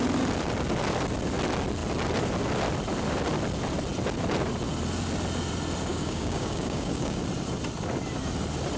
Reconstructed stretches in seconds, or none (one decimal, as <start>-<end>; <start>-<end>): 5.9-7.2